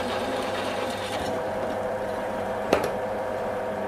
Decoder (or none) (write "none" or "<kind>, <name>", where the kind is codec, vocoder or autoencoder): vocoder, BigVGAN v2